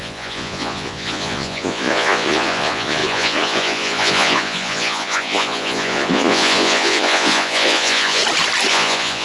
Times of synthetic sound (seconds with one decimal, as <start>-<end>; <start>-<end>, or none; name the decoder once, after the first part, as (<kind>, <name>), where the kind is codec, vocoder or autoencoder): 0.0-8.2 (vocoder, Vocos); 8.7-9.2